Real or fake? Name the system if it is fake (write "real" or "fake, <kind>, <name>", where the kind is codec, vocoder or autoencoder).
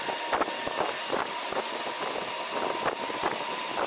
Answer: real